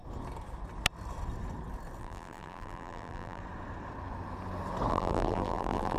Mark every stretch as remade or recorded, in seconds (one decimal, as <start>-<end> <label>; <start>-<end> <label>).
0.0-2.0 recorded; 2.0-3.4 remade; 3.4-4.9 recorded; 4.9-6.0 remade